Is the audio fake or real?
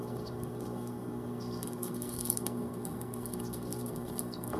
fake